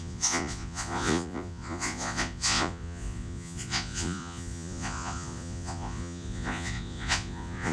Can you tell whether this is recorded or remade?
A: remade